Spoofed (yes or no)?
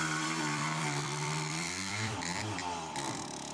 yes